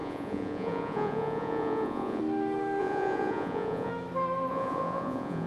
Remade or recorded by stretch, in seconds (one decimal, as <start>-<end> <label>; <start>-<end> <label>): 0.0-2.2 remade; 2.2-2.8 recorded; 2.8-3.9 remade; 3.9-4.5 recorded; 4.5-5.5 remade